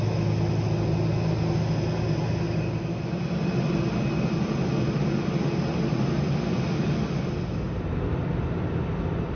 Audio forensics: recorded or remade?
recorded